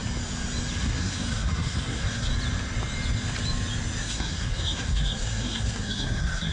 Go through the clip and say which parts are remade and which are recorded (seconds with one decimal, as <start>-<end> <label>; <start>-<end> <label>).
0.0-0.8 recorded; 0.8-2.3 remade; 2.3-4.0 recorded; 4.0-6.5 remade

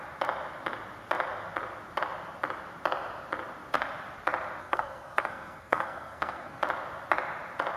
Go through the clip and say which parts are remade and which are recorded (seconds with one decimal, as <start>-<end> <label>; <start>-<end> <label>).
0.0-4.6 recorded; 4.6-6.6 remade; 6.6-7.8 recorded

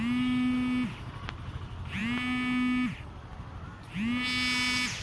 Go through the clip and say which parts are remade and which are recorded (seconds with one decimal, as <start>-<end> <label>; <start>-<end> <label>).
0.0-5.0 recorded

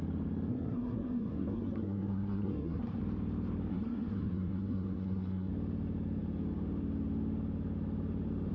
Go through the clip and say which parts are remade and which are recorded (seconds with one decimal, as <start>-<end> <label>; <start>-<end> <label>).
0.0-0.5 recorded; 0.5-3.0 remade; 3.0-3.7 recorded; 3.7-5.5 remade; 5.5-8.5 recorded

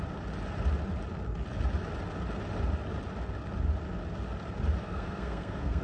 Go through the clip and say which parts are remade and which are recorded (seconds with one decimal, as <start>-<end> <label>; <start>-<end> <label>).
0.0-4.8 recorded; 4.8-5.8 remade

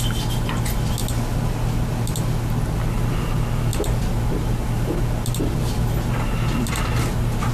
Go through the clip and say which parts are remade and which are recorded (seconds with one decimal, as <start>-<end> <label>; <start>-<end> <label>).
0.0-7.5 recorded

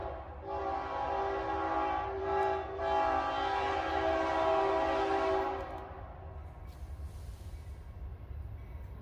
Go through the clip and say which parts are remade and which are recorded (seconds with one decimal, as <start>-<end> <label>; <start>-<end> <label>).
0.0-2.2 recorded; 2.2-2.8 remade; 2.8-9.0 recorded

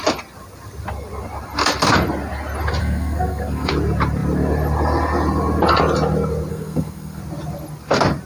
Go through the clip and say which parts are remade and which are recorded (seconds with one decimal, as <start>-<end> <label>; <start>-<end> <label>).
0.0-2.8 recorded; 2.8-3.7 remade; 3.7-6.5 recorded; 6.5-7.2 remade; 7.2-8.3 recorded